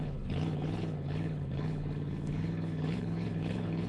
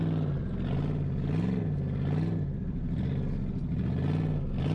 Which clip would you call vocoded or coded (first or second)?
first